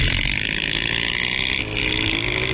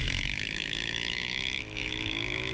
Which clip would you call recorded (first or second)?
first